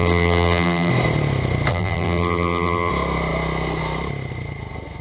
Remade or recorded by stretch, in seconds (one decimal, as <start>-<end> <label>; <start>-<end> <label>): 0.0-0.9 remade; 0.9-1.7 recorded; 1.7-2.9 remade; 2.9-5.0 recorded